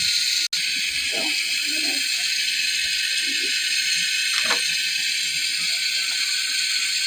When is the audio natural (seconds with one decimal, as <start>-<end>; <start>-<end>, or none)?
0.0-7.1